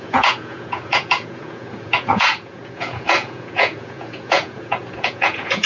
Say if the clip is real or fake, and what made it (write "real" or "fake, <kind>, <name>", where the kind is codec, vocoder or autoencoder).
fake, vocoder, Vocos